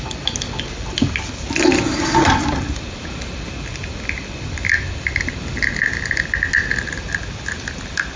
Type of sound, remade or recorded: recorded